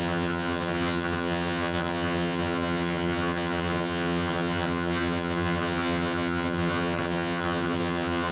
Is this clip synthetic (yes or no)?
yes